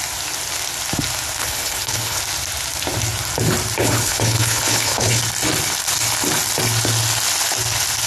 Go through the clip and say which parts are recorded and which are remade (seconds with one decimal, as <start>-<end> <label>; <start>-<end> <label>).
0.0-1.4 recorded; 1.4-2.2 remade; 2.2-3.8 recorded; 3.8-5.2 remade; 5.2-8.1 recorded